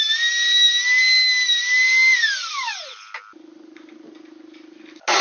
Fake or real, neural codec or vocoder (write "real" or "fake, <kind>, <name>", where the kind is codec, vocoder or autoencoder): real